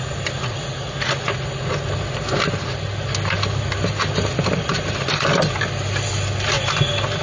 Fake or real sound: real